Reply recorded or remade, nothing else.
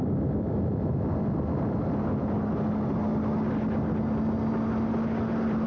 recorded